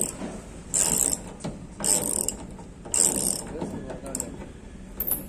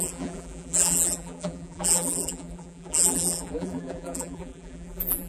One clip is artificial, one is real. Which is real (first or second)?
first